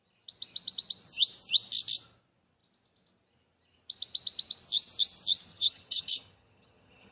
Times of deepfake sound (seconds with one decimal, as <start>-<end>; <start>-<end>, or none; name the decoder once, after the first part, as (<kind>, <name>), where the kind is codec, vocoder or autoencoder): 5.5-7.1 (vocoder, HiFi-GAN)